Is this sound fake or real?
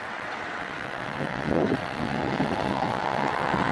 fake